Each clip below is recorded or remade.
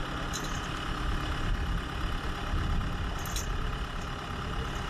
recorded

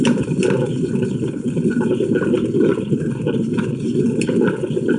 recorded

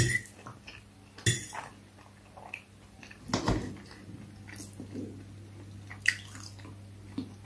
recorded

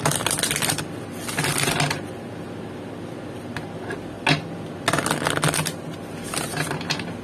recorded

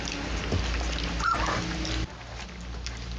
recorded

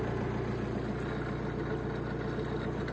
recorded